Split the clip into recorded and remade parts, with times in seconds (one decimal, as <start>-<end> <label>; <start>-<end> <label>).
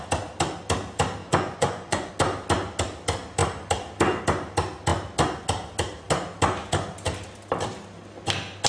0.0-1.2 recorded; 1.2-2.1 remade; 2.1-8.7 recorded